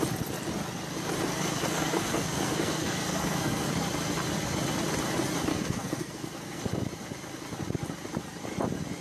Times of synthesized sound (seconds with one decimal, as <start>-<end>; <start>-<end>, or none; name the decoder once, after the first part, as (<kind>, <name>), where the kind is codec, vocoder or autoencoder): 1.3-3.7 (codec, SNAC); 5.5-6.6